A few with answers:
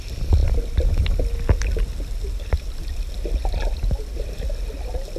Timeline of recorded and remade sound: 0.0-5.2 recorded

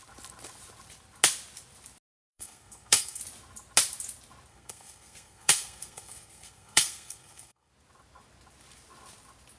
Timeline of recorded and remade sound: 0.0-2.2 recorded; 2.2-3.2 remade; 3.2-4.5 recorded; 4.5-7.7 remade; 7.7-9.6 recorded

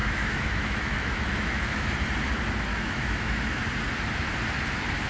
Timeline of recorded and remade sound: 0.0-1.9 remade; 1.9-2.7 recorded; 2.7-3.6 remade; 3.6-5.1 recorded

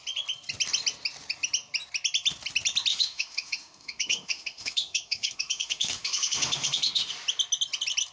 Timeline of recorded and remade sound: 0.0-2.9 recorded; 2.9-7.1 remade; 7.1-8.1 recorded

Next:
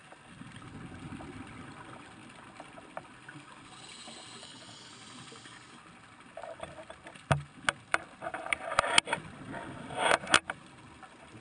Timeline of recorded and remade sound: 0.0-4.4 recorded; 4.4-4.9 remade; 4.9-11.4 recorded

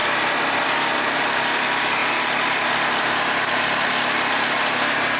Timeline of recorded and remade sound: 0.0-5.2 recorded